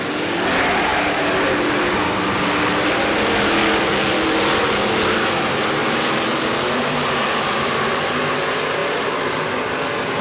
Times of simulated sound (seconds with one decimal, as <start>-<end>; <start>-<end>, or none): 0.9-2.3; 5.8-8.0; 8.8-9.4